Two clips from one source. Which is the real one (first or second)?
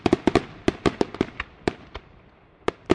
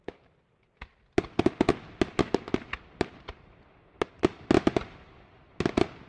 second